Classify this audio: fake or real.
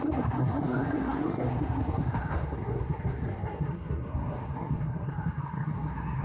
fake